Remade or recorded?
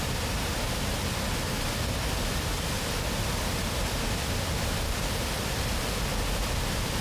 recorded